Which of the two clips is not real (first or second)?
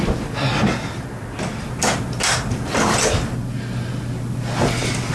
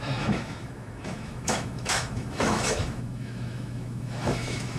second